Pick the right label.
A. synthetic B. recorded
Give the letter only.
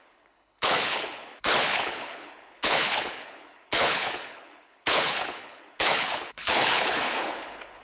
A